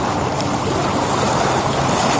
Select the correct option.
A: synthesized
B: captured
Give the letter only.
B